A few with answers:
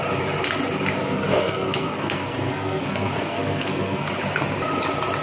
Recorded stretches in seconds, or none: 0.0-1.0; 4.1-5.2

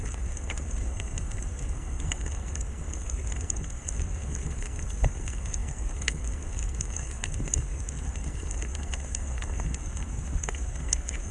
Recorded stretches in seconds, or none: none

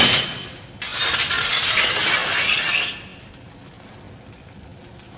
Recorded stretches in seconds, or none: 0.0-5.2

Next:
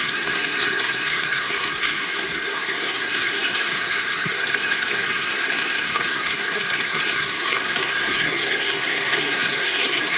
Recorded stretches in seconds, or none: none

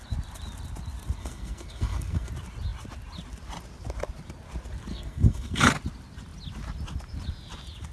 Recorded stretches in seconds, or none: 0.0-1.2; 2.3-4.9; 5.7-7.9